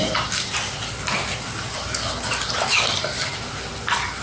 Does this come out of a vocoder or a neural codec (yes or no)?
no